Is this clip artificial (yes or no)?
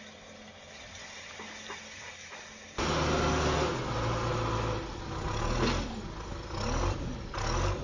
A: no